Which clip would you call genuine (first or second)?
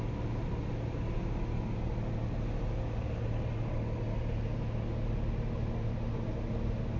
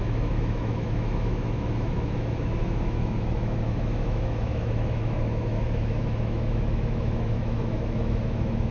first